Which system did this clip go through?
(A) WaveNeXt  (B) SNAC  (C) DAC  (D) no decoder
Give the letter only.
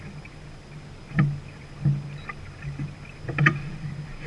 D